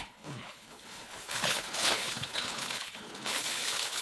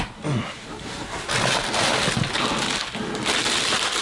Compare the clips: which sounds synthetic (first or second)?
first